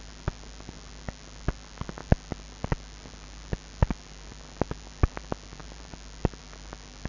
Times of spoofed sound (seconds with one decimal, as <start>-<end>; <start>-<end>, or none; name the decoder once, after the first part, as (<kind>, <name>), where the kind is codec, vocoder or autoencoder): none

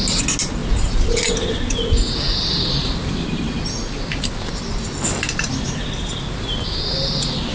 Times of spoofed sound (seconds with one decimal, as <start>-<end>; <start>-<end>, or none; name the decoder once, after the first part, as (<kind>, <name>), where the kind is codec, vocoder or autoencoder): none

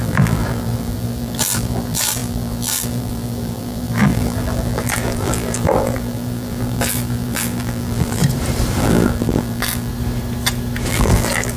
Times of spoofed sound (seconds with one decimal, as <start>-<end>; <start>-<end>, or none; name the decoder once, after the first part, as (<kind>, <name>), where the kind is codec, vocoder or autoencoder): 0.0-8.2 (vocoder, BigVGAN v2); 8.8-9.9; 10.9-11.6